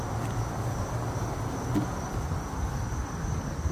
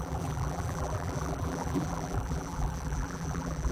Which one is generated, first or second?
second